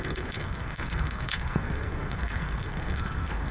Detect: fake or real fake